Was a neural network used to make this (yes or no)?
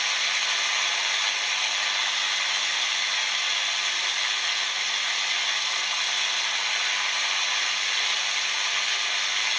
no